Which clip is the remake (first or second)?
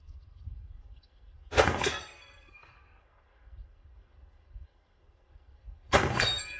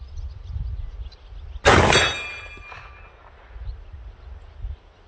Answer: first